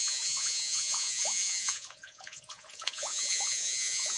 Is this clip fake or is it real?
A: fake